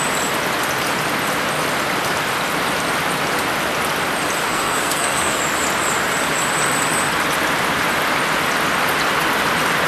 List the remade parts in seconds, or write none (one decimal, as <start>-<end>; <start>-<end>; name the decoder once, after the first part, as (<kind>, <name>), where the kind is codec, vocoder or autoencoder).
4.4-5.4 (codec, SNAC)

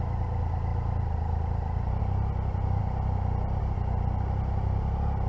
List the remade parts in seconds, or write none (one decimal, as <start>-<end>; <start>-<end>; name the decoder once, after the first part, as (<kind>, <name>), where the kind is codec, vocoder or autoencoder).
none